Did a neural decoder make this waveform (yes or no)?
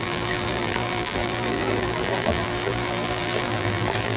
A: yes